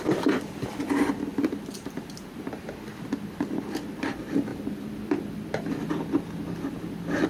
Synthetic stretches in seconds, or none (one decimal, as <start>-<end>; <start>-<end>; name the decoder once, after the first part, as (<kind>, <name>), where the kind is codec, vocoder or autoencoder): none